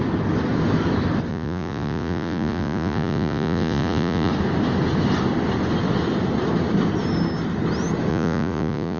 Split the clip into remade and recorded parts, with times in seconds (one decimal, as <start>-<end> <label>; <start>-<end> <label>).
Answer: 0.0-1.3 recorded; 1.3-4.3 remade; 4.3-8.1 recorded; 8.1-9.0 remade

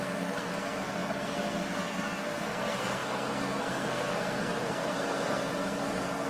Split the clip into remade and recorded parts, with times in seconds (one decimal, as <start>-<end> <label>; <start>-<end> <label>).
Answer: 0.0-6.3 remade

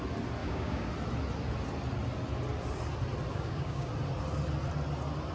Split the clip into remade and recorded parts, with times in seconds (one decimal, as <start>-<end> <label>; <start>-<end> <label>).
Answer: 0.0-0.4 recorded; 0.4-0.9 remade; 0.9-3.3 recorded; 3.3-3.9 remade; 3.9-5.3 recorded

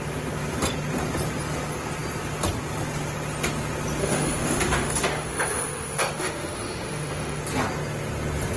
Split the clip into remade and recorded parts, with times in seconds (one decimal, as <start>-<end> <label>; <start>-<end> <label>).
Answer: 0.0-4.0 recorded; 4.0-7.4 remade; 7.4-8.6 recorded

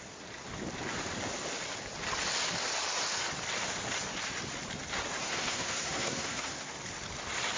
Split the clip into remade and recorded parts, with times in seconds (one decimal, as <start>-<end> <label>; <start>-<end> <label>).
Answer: 0.0-5.2 recorded; 5.2-6.7 remade; 6.7-7.6 recorded

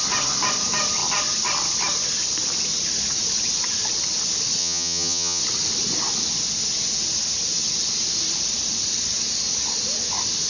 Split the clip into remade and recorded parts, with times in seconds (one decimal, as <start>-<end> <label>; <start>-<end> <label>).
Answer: 0.0-4.6 recorded; 4.6-5.4 remade; 5.4-10.5 recorded